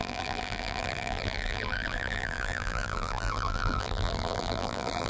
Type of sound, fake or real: fake